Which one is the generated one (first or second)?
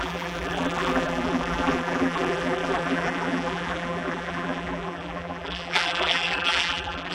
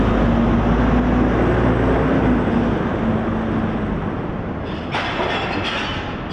first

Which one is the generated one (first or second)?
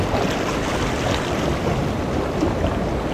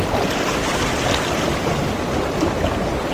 second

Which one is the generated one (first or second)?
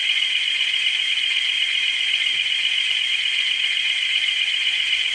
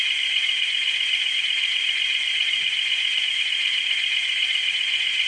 first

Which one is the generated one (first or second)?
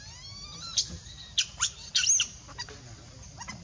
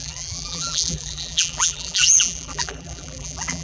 second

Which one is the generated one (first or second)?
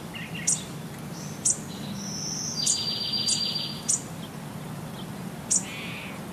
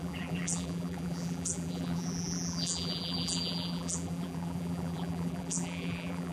second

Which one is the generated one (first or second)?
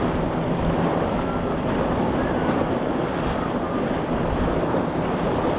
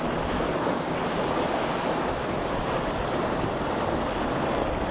first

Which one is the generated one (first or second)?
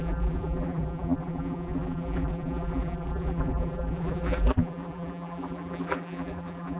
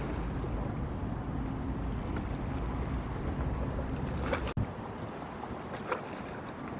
first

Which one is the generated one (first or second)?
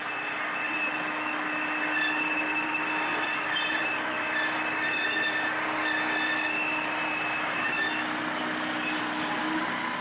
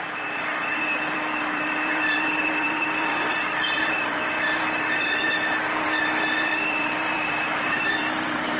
second